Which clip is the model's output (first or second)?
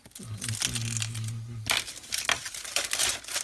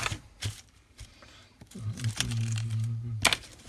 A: second